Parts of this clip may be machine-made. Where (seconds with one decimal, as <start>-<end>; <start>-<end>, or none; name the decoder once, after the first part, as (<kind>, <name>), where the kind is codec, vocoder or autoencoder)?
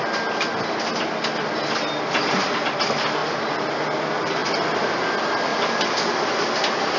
4.4-5.1 (vocoder, BigVGAN v2); 5.5-6.5